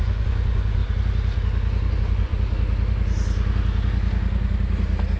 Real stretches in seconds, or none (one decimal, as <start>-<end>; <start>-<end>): 0.8-1.9; 2.3-5.2